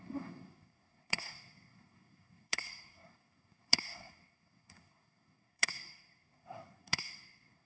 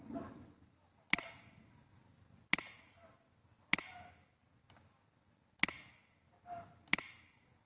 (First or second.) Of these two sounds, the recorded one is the second